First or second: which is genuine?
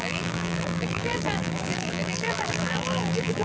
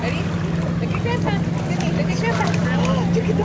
second